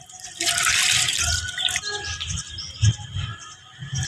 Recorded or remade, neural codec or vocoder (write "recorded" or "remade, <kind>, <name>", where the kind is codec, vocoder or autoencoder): recorded